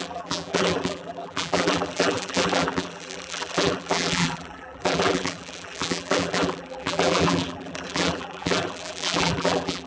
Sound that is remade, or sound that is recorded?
remade